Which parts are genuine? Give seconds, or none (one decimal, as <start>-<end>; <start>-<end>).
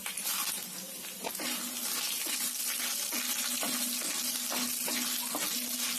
0.0-6.0